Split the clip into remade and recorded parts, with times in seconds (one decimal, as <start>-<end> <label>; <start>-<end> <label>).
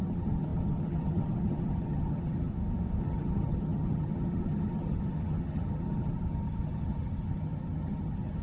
0.0-2.5 remade; 2.5-3.0 recorded; 3.0-8.4 remade